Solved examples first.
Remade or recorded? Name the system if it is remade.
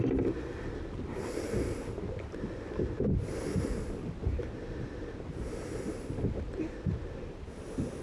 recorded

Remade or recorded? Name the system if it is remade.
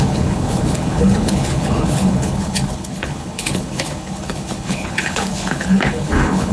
remade, codec, HILCodec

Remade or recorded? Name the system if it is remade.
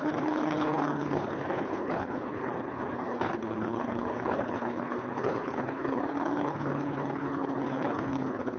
remade, codec, HILCodec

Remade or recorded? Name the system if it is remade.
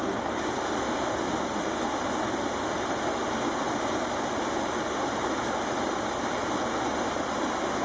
recorded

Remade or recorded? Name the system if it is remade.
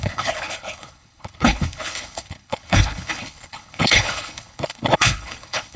remade, codec, HILCodec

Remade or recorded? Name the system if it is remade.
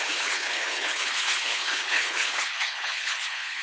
remade, codec, HILCodec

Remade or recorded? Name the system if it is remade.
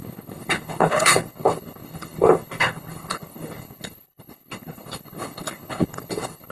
remade, codec, HILCodec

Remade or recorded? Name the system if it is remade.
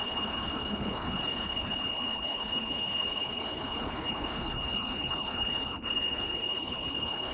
remade, codec, HILCodec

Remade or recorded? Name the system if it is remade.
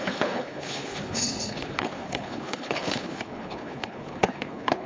remade, codec, HILCodec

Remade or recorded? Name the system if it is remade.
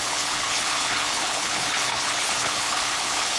remade, codec, HILCodec